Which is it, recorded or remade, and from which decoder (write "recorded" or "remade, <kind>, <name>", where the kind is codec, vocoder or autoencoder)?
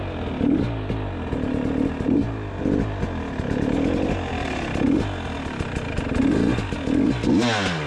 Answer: recorded